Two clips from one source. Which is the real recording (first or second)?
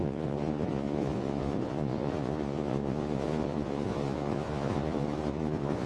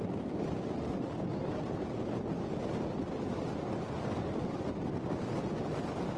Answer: second